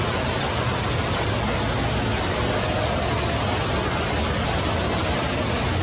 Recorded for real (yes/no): yes